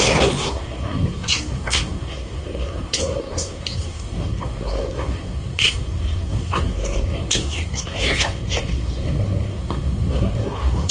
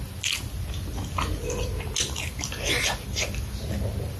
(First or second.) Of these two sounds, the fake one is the first